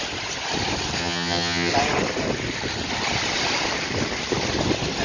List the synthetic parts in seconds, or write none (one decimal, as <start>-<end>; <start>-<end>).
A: 1.0-1.7